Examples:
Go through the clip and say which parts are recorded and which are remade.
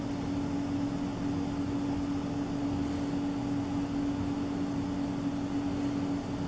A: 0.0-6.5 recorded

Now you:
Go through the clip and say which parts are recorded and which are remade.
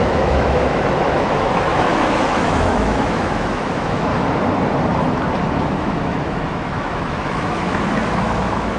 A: 0.0-4.1 remade; 4.1-5.8 recorded; 5.8-8.8 remade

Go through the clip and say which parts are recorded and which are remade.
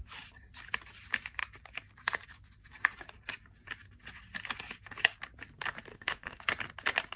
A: 0.0-5.9 recorded; 5.9-6.4 remade; 6.4-7.2 recorded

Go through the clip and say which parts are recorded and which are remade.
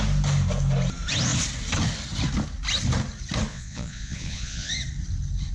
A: 0.0-3.5 recorded; 3.5-4.7 remade; 4.7-5.5 recorded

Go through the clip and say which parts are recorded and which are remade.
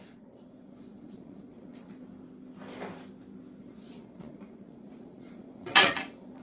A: 0.0-2.1 remade; 2.1-3.6 recorded; 3.6-6.4 remade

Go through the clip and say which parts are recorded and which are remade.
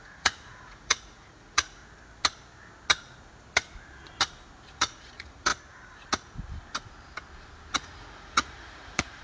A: 0.0-1.8 remade; 1.8-4.7 recorded; 4.7-5.5 remade; 5.5-7.7 recorded; 7.7-9.2 remade